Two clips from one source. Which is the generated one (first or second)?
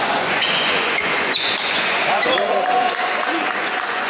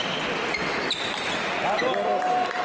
first